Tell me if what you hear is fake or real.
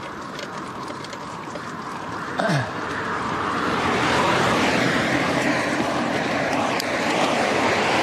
fake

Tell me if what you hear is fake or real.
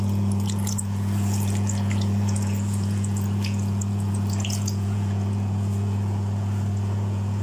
fake